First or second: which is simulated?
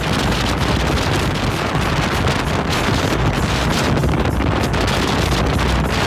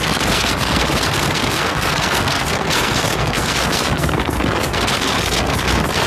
second